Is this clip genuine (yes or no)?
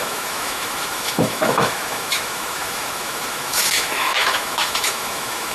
no